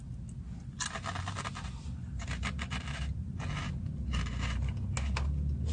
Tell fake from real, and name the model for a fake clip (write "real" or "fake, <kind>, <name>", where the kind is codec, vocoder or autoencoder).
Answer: real